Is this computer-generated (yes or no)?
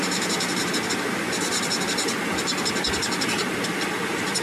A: no